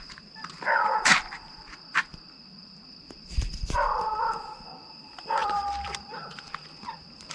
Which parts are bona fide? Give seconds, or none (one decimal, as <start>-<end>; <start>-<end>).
0.0-2.1; 4.5-5.4; 5.9-7.3